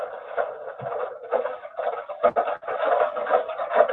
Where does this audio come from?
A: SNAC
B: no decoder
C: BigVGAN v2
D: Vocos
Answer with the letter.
B